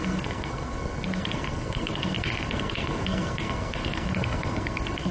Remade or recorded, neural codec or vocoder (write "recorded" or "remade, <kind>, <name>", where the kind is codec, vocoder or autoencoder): remade, codec, SNAC